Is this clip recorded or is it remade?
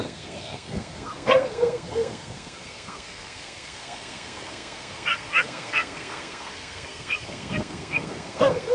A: remade